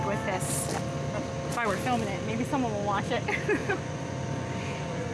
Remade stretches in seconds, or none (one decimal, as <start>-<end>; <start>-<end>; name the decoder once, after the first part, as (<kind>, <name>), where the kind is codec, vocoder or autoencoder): 3.6-5.1 (vocoder, Vocos)

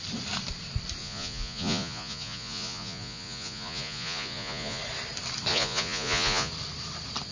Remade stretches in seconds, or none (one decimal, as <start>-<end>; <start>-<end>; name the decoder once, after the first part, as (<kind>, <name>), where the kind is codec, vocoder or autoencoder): 1.0-4.8 (vocoder, Vocos); 5.5-6.5

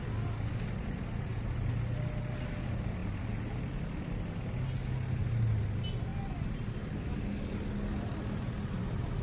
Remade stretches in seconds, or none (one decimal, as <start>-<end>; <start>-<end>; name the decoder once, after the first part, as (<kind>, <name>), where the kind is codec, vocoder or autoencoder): none

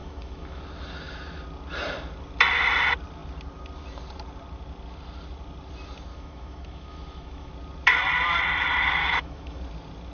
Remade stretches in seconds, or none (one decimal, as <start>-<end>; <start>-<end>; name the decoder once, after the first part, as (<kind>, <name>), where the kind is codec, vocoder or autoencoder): 0.0-0.6 (autoencoder, DAC-VAE); 6.1-7.5; 9.0-9.6

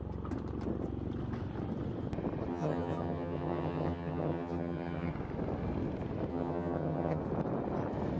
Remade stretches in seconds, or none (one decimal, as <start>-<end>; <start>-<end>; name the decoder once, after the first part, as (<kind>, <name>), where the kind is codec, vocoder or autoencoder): 2.5-5.1 (vocoder, HiFi-GAN); 6.3-7.2

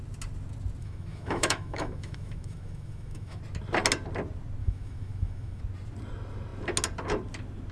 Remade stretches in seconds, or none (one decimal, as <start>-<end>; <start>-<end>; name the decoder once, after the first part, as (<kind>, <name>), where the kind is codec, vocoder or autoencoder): 0.8-3.4 (autoencoder, DAC-VAE); 4.6-5.6

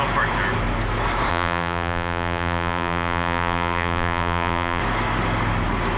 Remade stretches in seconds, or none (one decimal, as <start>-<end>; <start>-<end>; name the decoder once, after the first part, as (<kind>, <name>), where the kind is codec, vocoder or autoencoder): 1.3-4.8 (vocoder, BigVGAN v2)

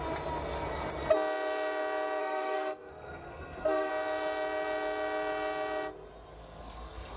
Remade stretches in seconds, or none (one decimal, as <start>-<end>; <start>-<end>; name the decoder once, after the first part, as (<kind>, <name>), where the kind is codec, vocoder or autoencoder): 2.2-3.9 (codec, SNAC); 6.4-7.2